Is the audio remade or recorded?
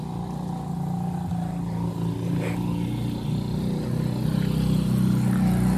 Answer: recorded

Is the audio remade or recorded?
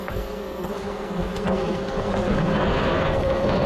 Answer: remade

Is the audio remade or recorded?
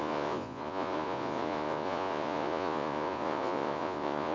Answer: remade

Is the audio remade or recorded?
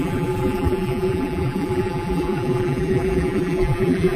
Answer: remade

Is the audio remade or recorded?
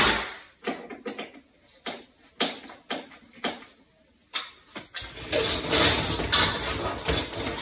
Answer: recorded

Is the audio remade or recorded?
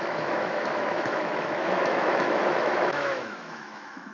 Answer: remade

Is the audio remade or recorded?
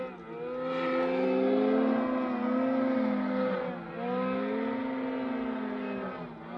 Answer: recorded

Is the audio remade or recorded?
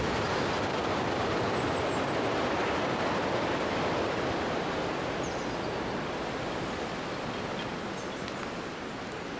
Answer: recorded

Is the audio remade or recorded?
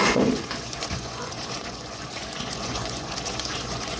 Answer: remade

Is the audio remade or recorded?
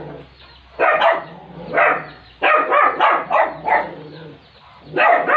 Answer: recorded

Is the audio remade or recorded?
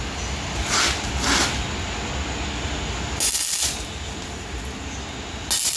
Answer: recorded